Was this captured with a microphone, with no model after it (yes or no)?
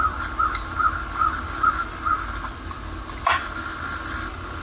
yes